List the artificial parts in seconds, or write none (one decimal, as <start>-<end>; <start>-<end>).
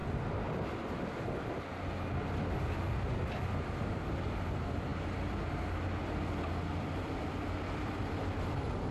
none